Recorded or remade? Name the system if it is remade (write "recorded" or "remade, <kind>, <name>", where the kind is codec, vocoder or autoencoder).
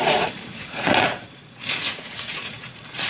remade, vocoder, Vocos